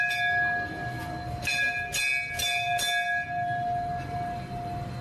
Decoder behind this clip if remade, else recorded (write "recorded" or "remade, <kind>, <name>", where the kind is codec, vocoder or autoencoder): recorded